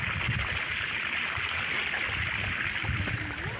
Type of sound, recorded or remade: recorded